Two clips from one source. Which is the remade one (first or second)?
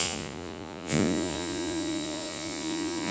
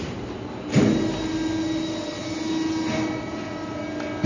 first